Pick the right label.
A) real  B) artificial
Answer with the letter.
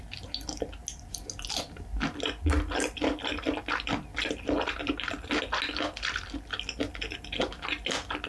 A